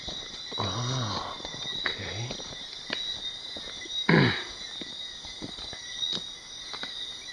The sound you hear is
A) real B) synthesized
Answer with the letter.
A